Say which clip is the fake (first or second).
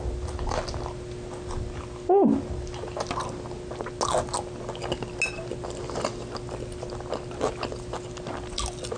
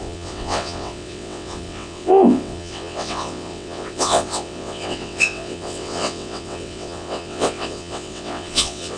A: second